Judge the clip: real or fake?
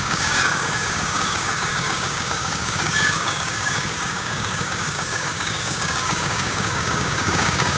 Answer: fake